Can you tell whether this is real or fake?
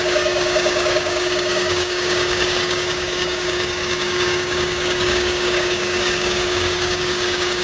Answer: fake